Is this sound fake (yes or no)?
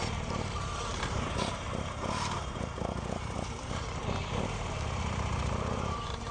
yes